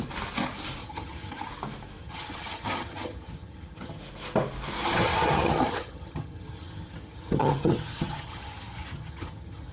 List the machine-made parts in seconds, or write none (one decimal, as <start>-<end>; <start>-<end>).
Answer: 0.8-1.5; 2.0-4.0; 4.8-9.7